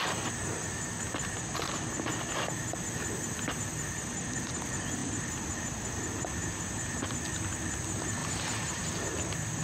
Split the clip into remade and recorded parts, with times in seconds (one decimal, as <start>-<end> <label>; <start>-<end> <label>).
0.0-0.4 recorded; 0.4-2.1 remade; 2.1-5.0 recorded; 5.0-5.6 remade; 5.6-6.4 recorded; 6.4-7.0 remade; 7.0-8.2 recorded; 8.2-9.1 remade; 9.1-9.6 recorded